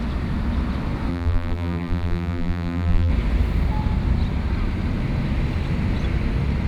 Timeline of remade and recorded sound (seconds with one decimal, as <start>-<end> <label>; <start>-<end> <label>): 0.0-1.1 recorded; 1.1-3.1 remade; 3.1-6.7 recorded